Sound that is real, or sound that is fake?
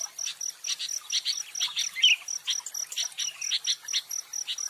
real